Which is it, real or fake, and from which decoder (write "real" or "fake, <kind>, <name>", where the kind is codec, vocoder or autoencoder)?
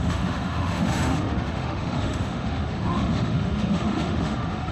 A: fake, autoencoder, DAC-VAE